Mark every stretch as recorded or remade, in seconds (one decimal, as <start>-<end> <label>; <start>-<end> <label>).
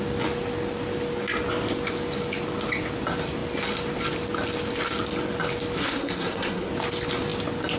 0.0-5.8 recorded; 5.8-6.7 remade; 6.7-7.8 recorded